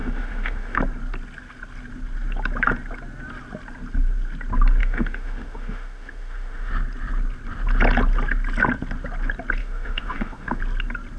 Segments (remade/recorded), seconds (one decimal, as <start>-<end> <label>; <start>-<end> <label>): 0.0-0.8 remade; 0.8-4.8 recorded; 4.8-6.7 remade; 6.7-9.6 recorded; 9.6-10.6 remade; 10.6-11.2 recorded

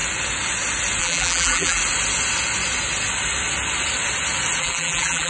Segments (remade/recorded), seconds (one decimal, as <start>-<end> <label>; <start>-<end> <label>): 0.0-1.0 recorded; 1.0-1.8 remade; 1.8-4.6 recorded; 4.6-5.3 remade

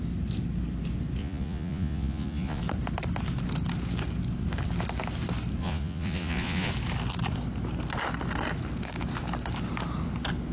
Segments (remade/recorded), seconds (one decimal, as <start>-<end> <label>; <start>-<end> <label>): 0.0-1.2 recorded; 1.2-2.6 remade; 2.6-5.6 recorded; 5.6-6.7 remade; 6.7-10.5 recorded

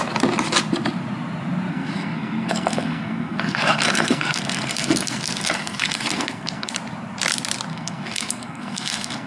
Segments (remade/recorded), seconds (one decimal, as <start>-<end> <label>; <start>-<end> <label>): 0.0-1.7 recorded; 1.7-6.7 remade; 6.7-7.7 recorded; 7.7-9.3 remade

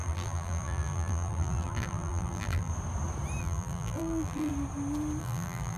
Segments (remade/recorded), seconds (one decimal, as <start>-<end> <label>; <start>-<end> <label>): 0.0-2.7 remade; 2.7-3.4 recorded; 3.4-4.5 remade; 4.5-5.2 recorded; 5.2-5.8 remade

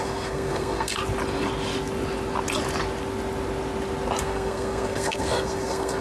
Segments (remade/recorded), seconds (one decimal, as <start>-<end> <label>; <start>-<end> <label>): 0.0-1.0 remade; 1.0-4.2 recorded; 4.2-6.0 remade